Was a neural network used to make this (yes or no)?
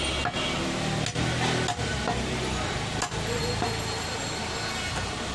no